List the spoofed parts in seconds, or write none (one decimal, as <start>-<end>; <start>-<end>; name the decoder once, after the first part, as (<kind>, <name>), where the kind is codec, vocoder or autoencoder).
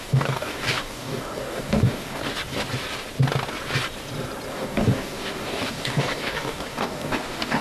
0.0-2.2 (codec, DAC); 4.5-7.6